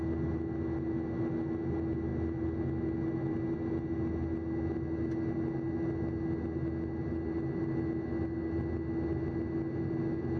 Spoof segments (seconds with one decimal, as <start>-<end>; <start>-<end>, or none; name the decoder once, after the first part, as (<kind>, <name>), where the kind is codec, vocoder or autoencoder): none